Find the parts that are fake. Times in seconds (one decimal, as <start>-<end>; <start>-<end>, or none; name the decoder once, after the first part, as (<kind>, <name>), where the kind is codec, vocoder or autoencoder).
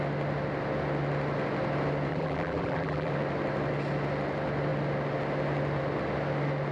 2.1-3.1 (vocoder, BigVGAN v2)